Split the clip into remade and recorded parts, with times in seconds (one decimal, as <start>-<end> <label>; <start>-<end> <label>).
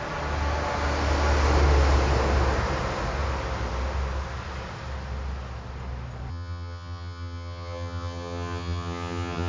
0.0-6.3 recorded; 6.3-9.5 remade